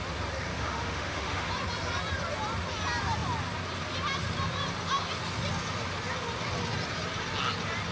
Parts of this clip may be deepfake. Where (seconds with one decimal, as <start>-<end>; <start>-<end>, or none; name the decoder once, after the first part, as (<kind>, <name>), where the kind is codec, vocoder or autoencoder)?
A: 0.5-1.5 (autoencoder, DAC-VAE)